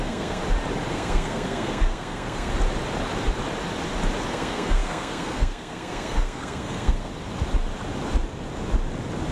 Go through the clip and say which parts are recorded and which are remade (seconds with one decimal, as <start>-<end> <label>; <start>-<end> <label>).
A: 0.0-0.4 remade; 0.4-0.9 recorded; 0.9-2.5 remade; 2.5-4.3 recorded; 4.3-7.1 remade; 7.1-9.3 recorded